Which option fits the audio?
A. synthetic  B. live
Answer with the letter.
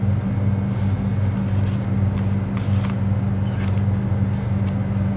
B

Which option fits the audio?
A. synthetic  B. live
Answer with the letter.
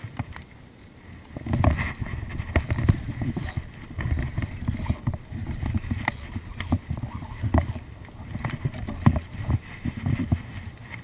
B